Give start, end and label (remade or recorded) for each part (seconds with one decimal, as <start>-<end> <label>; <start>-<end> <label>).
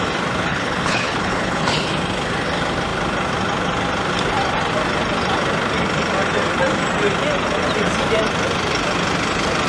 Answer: 0.0-0.5 recorded; 0.5-1.9 remade; 1.9-9.7 recorded